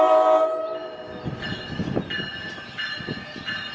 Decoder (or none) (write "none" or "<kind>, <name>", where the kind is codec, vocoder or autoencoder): none